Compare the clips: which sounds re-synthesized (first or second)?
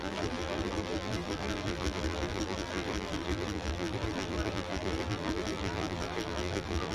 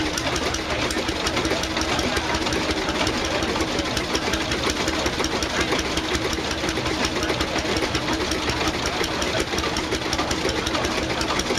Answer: first